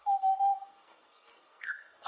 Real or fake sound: fake